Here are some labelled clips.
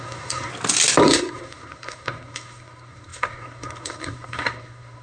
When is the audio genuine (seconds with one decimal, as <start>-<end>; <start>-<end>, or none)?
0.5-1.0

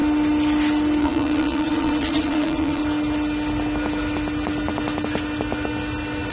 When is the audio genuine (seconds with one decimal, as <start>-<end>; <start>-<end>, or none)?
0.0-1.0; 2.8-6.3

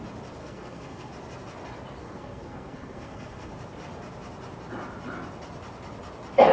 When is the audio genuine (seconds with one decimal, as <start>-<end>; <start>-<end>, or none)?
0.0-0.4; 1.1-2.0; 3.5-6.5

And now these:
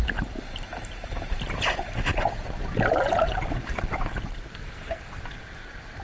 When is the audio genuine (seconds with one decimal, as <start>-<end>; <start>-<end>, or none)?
0.0-4.5; 5.2-6.0

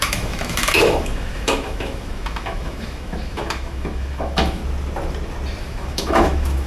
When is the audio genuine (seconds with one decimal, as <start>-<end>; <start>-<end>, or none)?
4.6-5.6

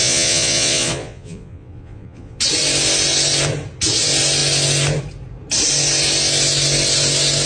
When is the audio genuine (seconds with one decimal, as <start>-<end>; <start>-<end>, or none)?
2.4-7.5

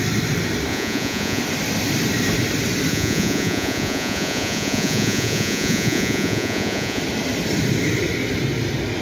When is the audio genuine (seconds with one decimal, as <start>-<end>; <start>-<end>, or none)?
0.0-0.7; 1.4-2.9; 7.0-9.0